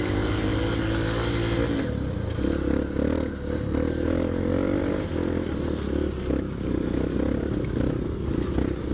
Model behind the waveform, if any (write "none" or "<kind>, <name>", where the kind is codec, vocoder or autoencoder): none